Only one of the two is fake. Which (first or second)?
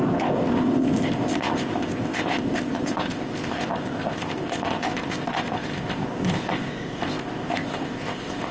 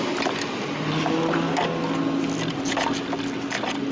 first